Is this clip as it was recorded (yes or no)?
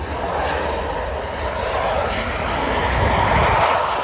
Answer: yes